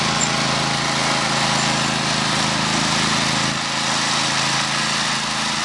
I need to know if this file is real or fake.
real